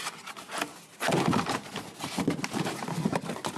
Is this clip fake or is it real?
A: real